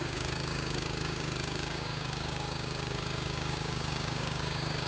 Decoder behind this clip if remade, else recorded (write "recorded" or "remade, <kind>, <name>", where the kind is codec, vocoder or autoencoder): remade, codec, DAC